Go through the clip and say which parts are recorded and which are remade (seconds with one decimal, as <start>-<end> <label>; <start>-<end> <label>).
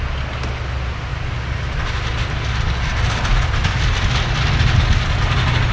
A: 0.0-5.7 recorded